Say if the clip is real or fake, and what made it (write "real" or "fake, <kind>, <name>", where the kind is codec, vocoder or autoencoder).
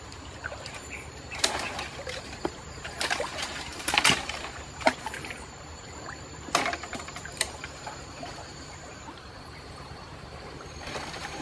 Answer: fake, vocoder, BigVGAN v2